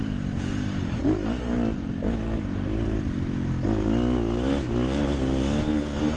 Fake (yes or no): no